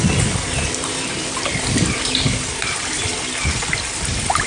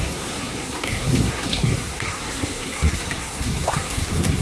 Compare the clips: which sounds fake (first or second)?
second